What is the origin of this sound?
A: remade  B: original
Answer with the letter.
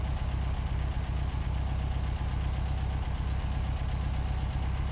B